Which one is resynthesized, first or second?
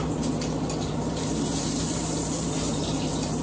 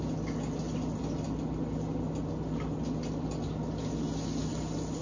first